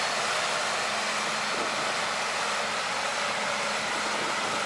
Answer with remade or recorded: recorded